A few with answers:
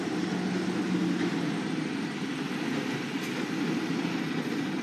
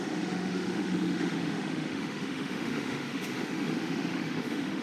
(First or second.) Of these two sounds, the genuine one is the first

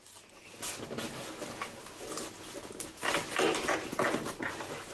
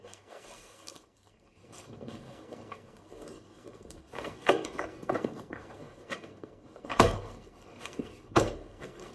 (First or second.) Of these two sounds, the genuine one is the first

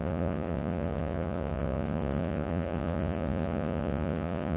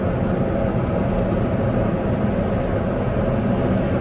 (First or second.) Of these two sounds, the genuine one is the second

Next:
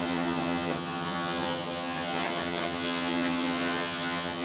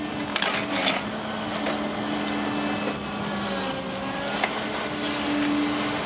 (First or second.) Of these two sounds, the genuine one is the second